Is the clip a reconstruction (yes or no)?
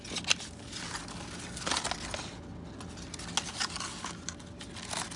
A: no